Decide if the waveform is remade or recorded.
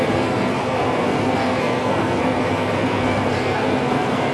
remade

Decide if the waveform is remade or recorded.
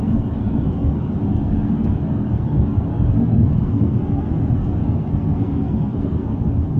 remade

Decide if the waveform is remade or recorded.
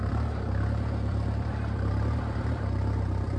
remade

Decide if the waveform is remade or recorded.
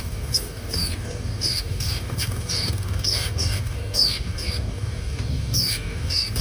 remade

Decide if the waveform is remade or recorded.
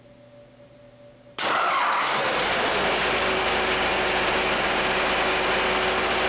recorded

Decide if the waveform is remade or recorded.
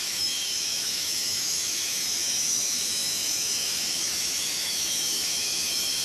remade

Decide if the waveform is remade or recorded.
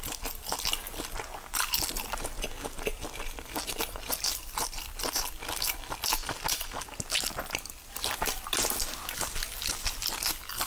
recorded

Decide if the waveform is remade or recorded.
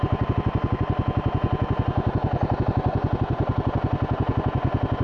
recorded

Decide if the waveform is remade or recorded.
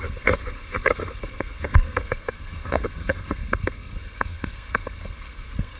remade